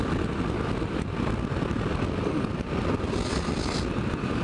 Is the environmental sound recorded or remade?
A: recorded